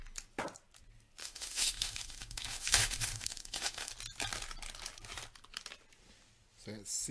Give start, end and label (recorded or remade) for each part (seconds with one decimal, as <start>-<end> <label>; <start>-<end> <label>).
0.0-1.2 recorded; 1.2-3.9 remade; 3.9-7.1 recorded